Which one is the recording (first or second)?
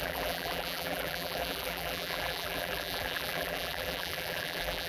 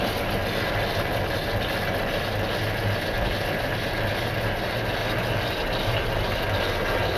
second